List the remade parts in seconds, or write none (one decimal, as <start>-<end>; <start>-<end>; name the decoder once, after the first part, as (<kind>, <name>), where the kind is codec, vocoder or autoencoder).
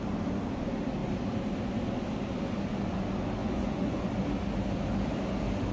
3.4-4.1 (vocoder, Vocos)